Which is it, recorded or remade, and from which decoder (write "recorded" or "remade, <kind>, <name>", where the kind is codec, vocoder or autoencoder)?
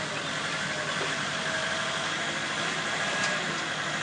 recorded